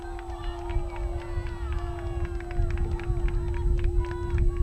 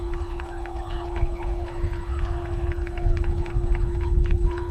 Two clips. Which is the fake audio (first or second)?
second